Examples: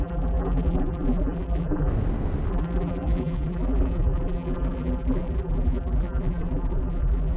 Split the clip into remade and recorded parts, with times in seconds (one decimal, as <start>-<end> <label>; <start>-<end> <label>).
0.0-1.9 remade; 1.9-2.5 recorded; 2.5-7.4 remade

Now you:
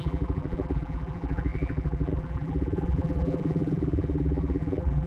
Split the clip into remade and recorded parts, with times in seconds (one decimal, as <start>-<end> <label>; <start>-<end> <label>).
0.0-5.1 remade

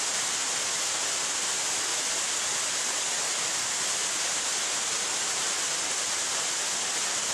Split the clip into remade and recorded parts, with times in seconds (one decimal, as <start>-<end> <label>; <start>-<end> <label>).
0.0-7.3 recorded